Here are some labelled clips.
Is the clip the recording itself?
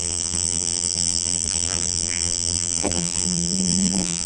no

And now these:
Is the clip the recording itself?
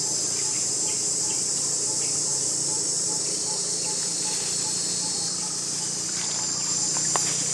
no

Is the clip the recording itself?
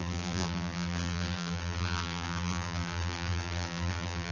no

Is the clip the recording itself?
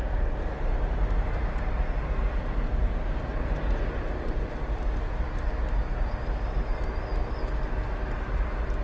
yes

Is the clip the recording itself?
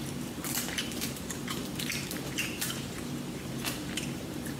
no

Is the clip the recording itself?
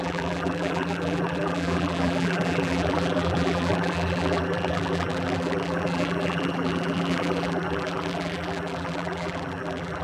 no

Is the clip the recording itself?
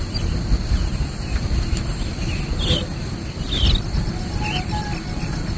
yes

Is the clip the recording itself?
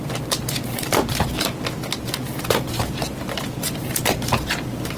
no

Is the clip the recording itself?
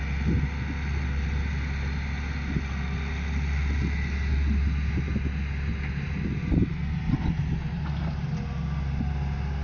yes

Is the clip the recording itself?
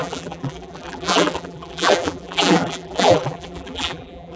no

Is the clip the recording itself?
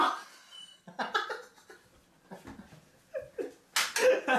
yes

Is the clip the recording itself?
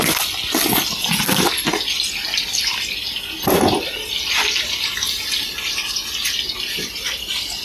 yes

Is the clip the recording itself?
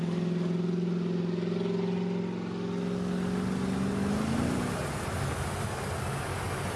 yes